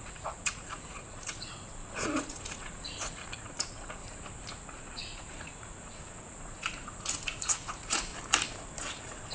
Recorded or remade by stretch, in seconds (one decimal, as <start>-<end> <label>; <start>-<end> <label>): 0.0-4.0 remade; 4.0-4.5 recorded; 4.5-8.1 remade; 8.1-8.8 recorded; 8.8-9.3 remade